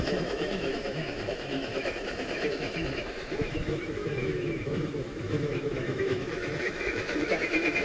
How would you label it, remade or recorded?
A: remade